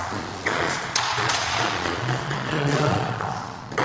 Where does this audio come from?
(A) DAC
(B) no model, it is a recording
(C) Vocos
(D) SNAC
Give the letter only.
C